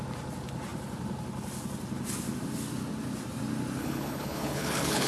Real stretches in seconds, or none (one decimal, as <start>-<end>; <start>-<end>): 0.0-3.8